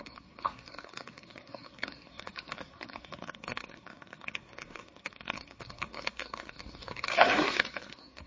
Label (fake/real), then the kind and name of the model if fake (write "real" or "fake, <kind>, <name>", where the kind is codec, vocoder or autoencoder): fake, codec, SNAC